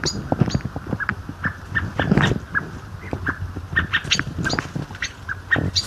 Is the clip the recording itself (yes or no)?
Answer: yes